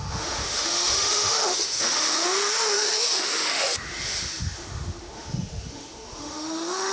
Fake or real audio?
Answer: fake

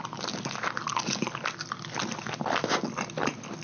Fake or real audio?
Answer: real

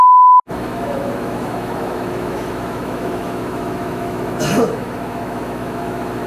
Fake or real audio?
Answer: fake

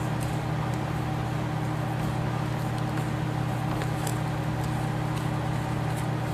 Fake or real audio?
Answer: real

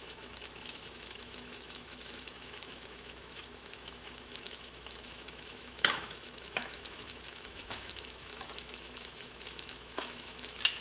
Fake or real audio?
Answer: fake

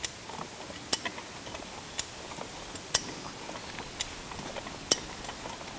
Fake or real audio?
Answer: real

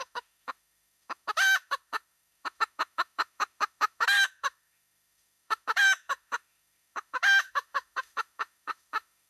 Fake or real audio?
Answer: fake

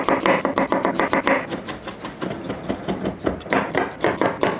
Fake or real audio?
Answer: real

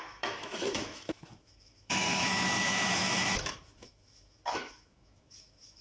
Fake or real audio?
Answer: fake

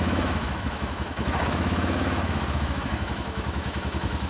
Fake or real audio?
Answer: fake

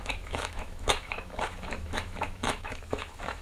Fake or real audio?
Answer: fake